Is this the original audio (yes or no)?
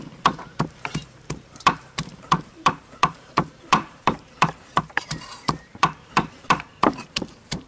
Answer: no